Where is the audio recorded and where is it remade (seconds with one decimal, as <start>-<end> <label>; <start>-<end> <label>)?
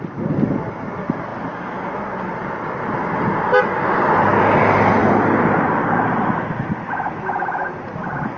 0.0-8.4 recorded